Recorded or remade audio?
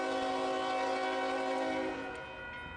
recorded